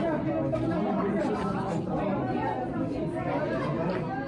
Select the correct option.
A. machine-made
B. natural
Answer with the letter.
B